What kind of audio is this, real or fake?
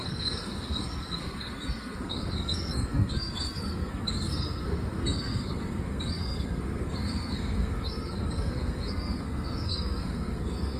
fake